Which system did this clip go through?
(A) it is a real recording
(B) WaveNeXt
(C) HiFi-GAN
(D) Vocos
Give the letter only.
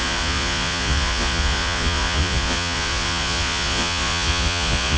D